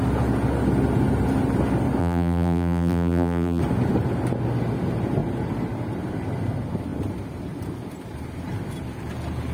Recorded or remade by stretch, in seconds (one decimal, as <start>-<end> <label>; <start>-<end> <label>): 0.0-2.0 recorded; 2.0-3.6 remade; 3.6-9.5 recorded